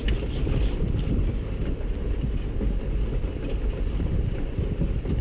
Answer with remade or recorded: recorded